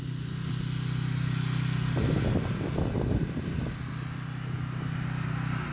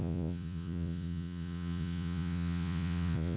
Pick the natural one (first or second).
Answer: first